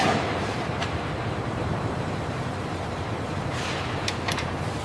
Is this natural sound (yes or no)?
no